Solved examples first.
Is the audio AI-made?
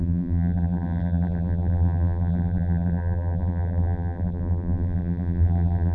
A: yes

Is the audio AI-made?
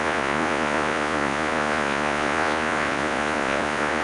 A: yes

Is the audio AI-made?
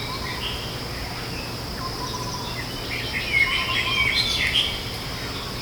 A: no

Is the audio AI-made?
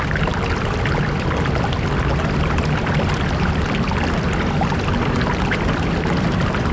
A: no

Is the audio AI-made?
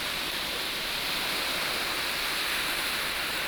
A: no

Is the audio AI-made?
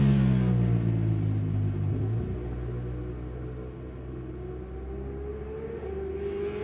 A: no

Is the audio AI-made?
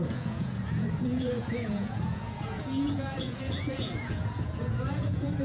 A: yes